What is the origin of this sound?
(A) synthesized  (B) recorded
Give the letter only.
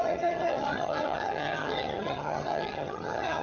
A